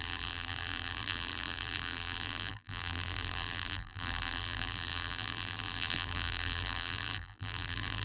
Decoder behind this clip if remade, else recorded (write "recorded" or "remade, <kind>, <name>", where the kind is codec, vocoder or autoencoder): remade, vocoder, BigVGAN v2